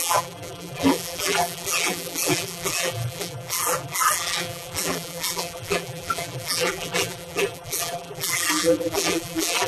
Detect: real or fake fake